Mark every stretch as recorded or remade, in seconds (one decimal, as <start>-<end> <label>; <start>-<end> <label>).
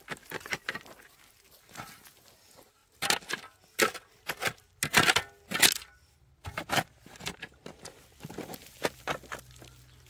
0.0-10.1 recorded